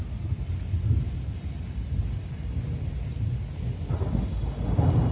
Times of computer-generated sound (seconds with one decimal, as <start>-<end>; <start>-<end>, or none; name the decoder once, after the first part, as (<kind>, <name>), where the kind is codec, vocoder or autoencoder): none